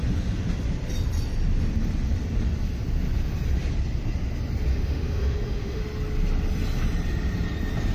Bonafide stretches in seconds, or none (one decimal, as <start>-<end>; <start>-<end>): 0.0-4.7; 5.8-7.9